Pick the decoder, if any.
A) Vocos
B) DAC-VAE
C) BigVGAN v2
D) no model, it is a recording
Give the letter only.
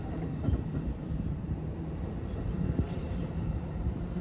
C